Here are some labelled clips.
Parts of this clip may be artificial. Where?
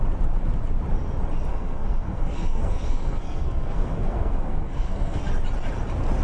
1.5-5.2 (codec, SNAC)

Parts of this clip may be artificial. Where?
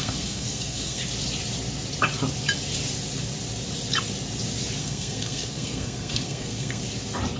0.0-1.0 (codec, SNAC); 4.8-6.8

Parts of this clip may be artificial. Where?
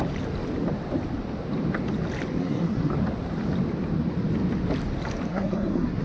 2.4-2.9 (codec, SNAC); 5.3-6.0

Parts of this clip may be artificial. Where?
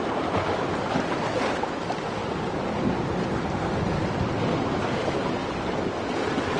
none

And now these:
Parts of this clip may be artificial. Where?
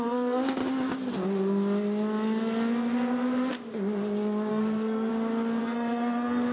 0.0-0.6 (codec, SNAC); 4.5-5.1; 5.6-6.5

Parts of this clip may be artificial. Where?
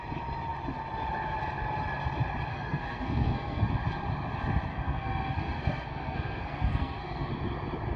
2.5-3.7 (codec, SNAC); 4.7-7.3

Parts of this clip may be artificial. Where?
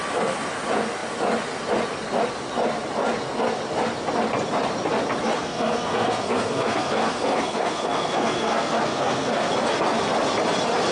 5.4-9.5 (codec, SNAC)